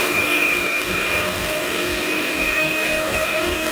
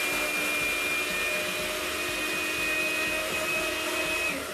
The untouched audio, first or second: second